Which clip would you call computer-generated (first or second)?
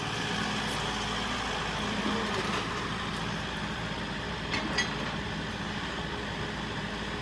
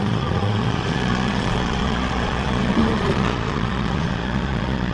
second